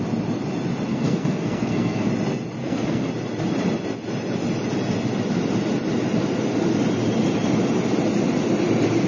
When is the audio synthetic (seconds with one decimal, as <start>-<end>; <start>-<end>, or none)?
0.9-2.1; 2.6-3.1